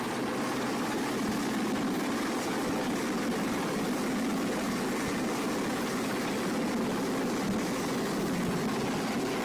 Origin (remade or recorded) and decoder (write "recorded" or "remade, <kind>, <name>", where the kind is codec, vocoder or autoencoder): recorded